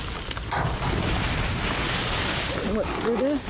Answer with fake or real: real